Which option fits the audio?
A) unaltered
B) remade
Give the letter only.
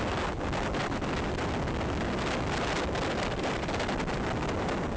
A